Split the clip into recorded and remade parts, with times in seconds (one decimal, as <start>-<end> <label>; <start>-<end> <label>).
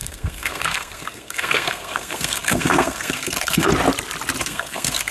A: 0.0-3.7 remade; 3.7-4.4 recorded; 4.4-5.1 remade